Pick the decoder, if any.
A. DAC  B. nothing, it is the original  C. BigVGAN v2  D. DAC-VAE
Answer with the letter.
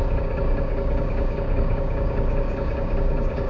A